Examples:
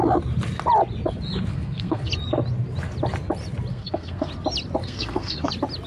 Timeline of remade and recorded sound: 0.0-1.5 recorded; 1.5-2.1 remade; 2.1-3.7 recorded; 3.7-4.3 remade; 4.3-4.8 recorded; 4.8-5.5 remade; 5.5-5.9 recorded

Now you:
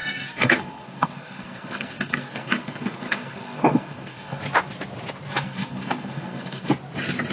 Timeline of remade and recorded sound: 0.0-4.4 remade; 4.4-5.3 recorded; 5.3-6.7 remade; 6.7-7.3 recorded

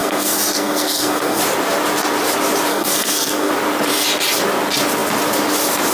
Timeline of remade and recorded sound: 0.0-1.4 remade; 1.4-2.7 recorded; 2.7-3.5 remade; 3.5-5.9 recorded

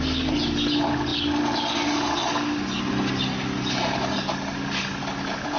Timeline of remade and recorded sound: 0.0-5.6 recorded

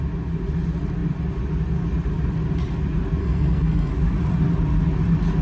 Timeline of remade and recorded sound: 0.0-3.2 recorded; 3.2-3.9 remade; 3.9-5.4 recorded

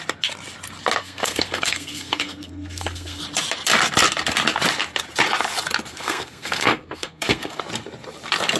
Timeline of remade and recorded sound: 0.0-1.0 recorded; 1.0-3.2 remade; 3.2-5.9 recorded; 5.9-7.6 remade; 7.6-8.6 recorded

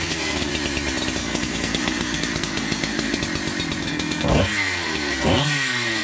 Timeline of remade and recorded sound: 0.0-0.5 remade; 0.5-1.2 recorded; 1.2-3.2 remade; 3.2-3.8 recorded; 3.8-6.0 remade